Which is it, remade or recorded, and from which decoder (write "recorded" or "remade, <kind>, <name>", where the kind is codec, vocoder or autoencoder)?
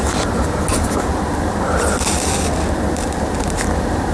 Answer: recorded